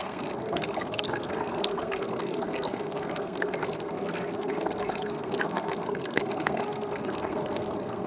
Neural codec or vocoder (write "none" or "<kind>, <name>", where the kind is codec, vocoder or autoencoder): codec, SNAC